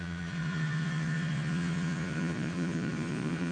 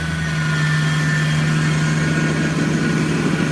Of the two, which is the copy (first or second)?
first